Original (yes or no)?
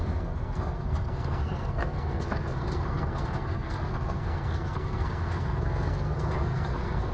no